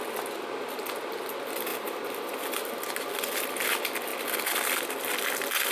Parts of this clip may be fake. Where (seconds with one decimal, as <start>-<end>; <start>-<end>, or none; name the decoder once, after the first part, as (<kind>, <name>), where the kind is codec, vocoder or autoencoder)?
none